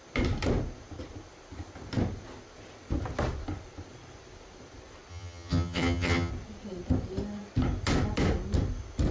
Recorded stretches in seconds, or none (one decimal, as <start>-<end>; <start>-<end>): 0.0-5.1; 6.3-9.1